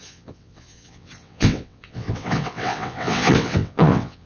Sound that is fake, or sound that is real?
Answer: fake